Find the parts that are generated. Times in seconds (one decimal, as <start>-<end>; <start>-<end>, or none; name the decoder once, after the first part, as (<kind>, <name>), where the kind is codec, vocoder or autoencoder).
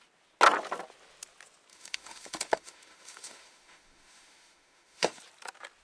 1.7-5.2 (autoencoder, DAC-VAE)